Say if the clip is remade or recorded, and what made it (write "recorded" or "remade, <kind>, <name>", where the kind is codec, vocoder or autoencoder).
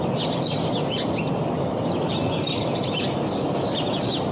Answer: recorded